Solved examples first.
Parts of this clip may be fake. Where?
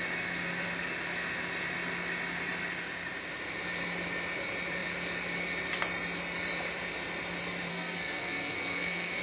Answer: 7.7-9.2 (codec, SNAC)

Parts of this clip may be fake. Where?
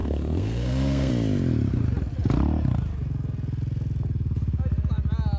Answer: 0.0-1.1 (codec, SNAC)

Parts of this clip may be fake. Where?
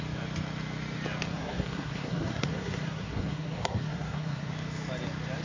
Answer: 1.3-4.5 (codec, SNAC)